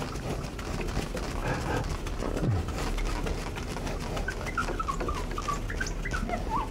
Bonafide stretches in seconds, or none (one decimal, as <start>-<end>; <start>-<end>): 0.0-1.4; 3.1-6.7